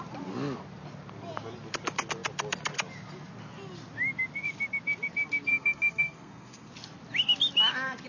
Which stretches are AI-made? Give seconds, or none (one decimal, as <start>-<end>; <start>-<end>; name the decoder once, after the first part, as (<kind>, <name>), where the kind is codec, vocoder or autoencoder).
5.5-6.7 (codec, SNAC)